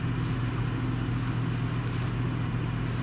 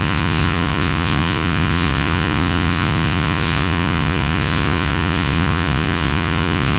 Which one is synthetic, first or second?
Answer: second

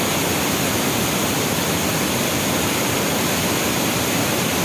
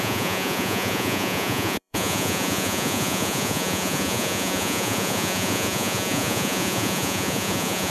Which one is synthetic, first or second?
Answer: second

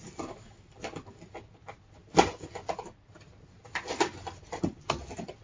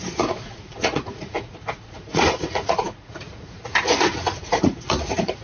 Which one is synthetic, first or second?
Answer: second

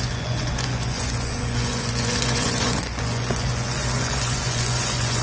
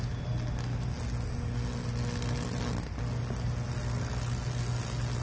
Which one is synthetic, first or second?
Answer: first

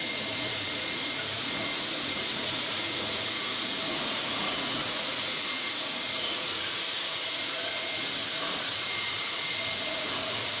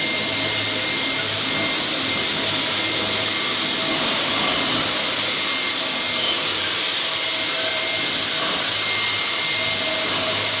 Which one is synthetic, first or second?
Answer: first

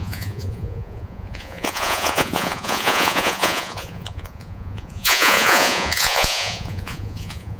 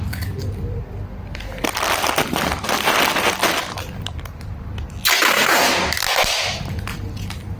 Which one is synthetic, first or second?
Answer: first